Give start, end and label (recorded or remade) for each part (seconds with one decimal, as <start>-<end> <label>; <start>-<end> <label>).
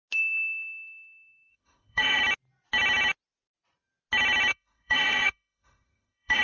0.0-1.5 recorded; 1.5-2.2 remade; 2.2-4.5 recorded; 4.5-6.4 remade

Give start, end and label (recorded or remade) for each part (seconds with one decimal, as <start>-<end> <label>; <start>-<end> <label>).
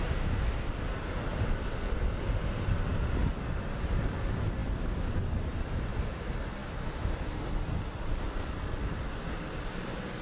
0.0-6.6 recorded; 6.6-7.4 remade; 7.4-10.2 recorded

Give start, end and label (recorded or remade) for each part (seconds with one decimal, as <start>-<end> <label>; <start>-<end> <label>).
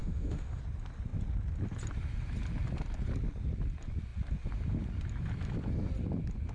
0.0-0.6 remade; 0.6-6.5 recorded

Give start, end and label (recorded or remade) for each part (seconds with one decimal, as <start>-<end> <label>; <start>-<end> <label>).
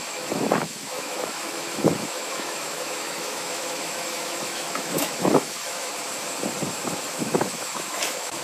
0.0-5.9 remade; 5.9-7.1 recorded; 7.1-8.4 remade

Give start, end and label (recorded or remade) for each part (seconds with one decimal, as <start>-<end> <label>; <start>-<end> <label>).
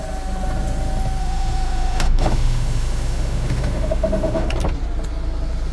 0.0-1.2 recorded; 1.2-4.5 remade; 4.5-5.7 recorded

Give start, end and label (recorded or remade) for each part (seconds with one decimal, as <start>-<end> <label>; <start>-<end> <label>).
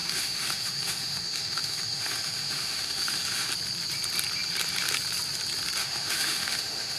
0.0-3.5 remade; 3.5-5.8 recorded; 5.8-7.0 remade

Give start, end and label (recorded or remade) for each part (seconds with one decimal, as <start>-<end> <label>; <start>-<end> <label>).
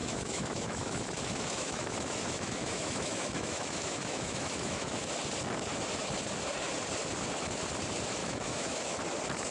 0.0-5.1 remade; 5.1-8.2 recorded; 8.2-9.0 remade; 9.0-9.5 recorded